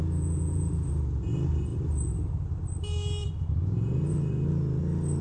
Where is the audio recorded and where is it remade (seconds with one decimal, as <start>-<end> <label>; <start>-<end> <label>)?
0.0-0.9 remade; 0.9-5.2 recorded